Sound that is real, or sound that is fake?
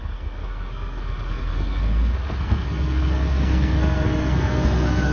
fake